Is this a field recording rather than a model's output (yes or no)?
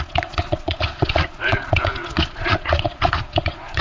no